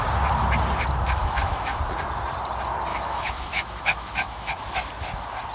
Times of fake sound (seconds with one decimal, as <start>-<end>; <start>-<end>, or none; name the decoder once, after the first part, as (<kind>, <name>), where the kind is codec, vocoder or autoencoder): 1.2-1.8 (autoencoder, DAC-VAE); 2.9-4.5